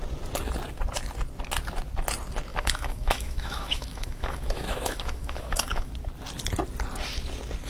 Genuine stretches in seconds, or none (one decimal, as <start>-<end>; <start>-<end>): 0.0-2.5; 5.9-7.7